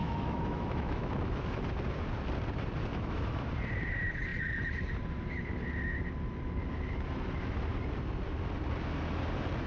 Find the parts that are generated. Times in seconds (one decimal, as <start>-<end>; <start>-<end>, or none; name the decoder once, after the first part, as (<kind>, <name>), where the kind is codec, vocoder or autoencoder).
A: 0.0-1.6 (autoencoder, DAC-VAE); 2.9-3.4